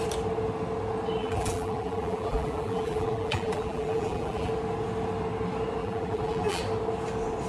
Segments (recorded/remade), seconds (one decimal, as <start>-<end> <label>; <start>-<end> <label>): 0.0-1.2 recorded; 1.2-4.5 remade; 4.5-5.8 recorded; 5.8-6.6 remade; 6.6-7.5 recorded